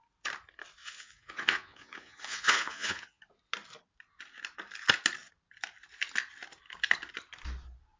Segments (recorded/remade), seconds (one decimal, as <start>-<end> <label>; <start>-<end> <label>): 0.0-0.8 recorded; 0.8-3.2 remade; 3.2-8.0 recorded